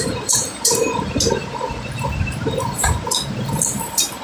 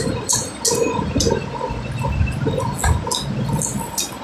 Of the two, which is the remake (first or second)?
first